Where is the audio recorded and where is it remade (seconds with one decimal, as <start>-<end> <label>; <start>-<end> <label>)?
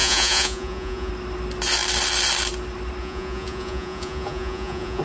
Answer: 0.0-1.1 remade; 1.1-3.0 recorded; 3.0-5.0 remade